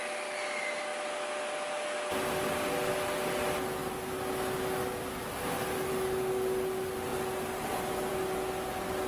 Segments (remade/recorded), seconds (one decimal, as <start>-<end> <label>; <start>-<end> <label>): 0.0-9.1 recorded